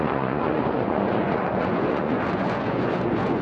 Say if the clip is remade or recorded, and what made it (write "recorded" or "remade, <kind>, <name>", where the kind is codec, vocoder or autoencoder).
remade, vocoder, Vocos